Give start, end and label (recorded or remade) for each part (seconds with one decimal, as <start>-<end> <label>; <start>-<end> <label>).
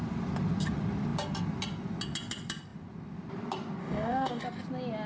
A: 0.0-3.8 recorded; 3.8-4.4 remade; 4.4-5.1 recorded